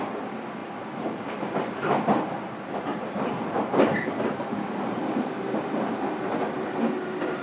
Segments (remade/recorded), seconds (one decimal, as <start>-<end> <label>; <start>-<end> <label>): 0.0-0.6 recorded; 0.6-1.5 remade; 1.5-2.9 recorded; 2.9-5.9 remade; 5.9-7.4 recorded